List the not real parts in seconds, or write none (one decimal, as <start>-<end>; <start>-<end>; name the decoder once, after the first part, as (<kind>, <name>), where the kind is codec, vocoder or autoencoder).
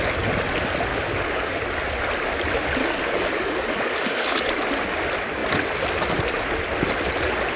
0.9-1.6 (codec, DAC); 2.8-4.4